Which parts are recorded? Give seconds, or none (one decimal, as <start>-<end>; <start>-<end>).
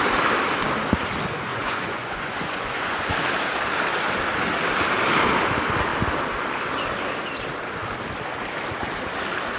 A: 0.0-1.5; 3.1-9.6